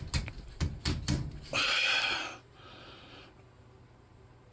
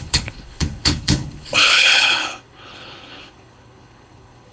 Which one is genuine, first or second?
first